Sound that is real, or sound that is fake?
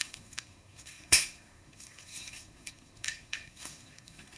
fake